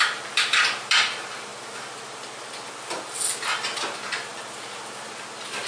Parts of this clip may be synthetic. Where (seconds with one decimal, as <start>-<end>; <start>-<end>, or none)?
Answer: none